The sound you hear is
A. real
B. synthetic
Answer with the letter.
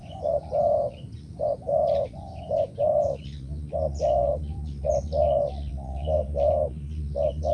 B